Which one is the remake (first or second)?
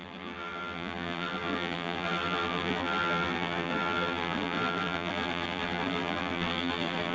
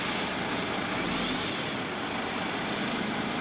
first